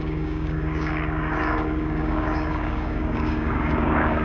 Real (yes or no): no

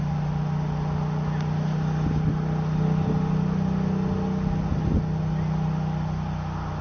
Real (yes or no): yes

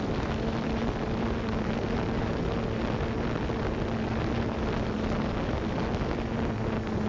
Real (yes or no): yes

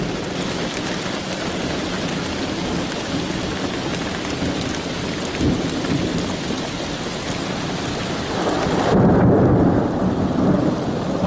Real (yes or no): yes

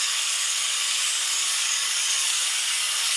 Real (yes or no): no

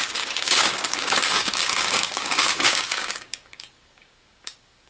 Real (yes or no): no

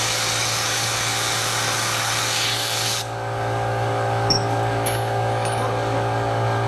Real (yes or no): no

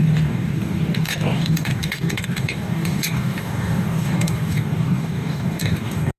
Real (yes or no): no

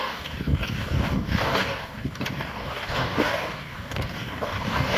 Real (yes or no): no